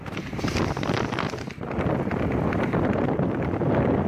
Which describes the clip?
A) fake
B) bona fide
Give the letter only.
B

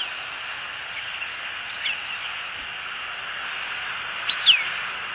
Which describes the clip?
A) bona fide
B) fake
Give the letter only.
A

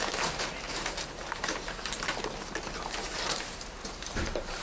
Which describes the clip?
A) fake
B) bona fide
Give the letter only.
A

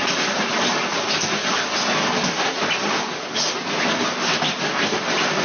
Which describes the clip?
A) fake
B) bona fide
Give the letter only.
B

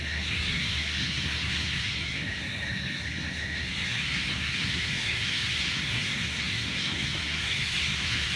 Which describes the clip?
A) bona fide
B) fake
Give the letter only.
B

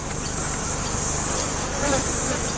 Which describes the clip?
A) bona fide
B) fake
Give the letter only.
A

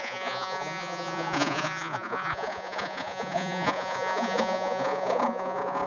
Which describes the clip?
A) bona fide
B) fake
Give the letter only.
B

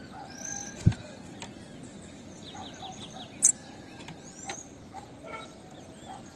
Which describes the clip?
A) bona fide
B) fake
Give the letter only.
B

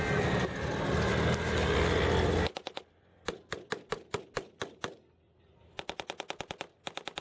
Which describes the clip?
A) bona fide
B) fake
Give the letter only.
A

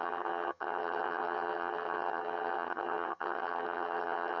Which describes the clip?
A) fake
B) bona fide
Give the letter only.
A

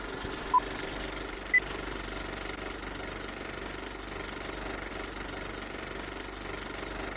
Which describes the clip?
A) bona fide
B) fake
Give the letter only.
A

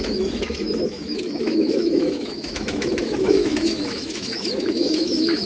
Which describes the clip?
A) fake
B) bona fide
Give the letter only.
A